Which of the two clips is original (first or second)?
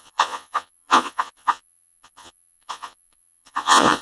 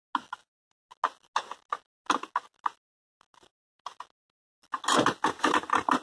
second